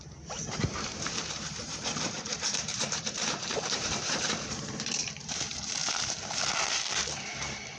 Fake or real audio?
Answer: fake